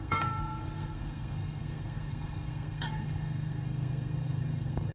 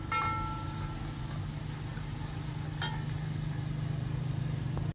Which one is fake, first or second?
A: first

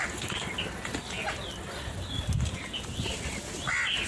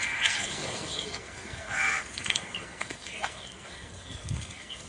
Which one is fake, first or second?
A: second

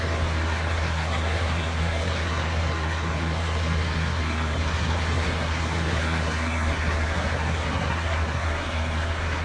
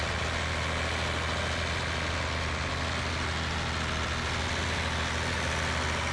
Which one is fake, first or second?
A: first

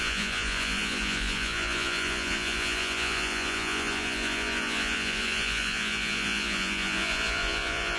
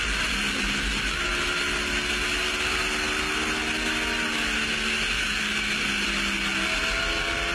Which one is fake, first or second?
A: first